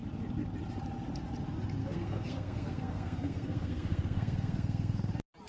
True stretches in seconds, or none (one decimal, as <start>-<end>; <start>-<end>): 0.0-1.8; 5.1-5.5